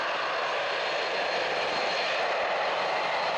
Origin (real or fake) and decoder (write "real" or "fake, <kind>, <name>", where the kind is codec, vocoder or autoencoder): real